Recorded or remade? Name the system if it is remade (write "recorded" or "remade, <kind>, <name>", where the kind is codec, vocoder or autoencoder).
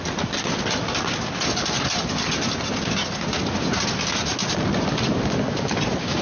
recorded